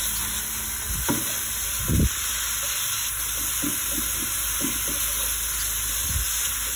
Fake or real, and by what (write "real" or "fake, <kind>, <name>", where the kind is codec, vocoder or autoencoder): real